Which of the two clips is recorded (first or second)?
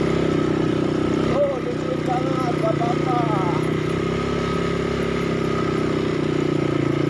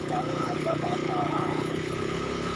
first